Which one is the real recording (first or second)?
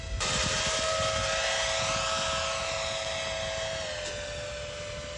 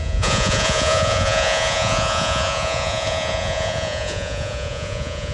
first